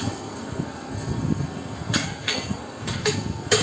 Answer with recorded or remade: remade